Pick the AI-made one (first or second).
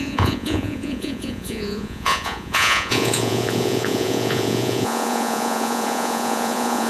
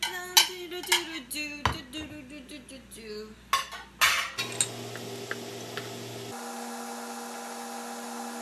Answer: first